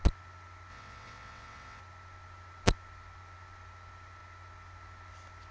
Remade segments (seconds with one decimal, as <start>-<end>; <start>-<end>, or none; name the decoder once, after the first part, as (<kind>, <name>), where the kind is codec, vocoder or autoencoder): 0.7-1.8 (vocoder, WaveNeXt)